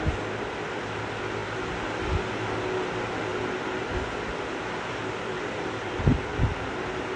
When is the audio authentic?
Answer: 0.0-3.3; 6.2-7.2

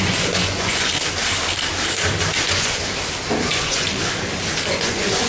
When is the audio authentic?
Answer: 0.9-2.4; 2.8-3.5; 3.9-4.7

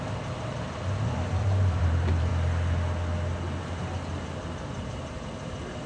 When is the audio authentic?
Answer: 2.3-5.9

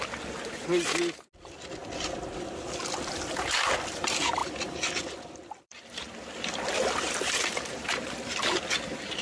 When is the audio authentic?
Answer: 0.0-4.4; 8.7-9.2

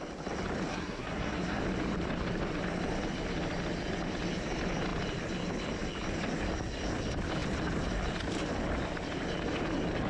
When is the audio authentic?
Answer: 0.0-0.7; 1.6-10.1

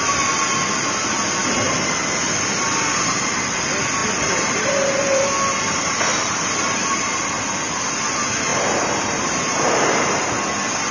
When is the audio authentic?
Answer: 0.0-4.0; 5.3-8.5; 10.3-10.9